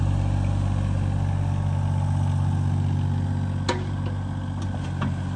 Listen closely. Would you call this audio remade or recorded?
recorded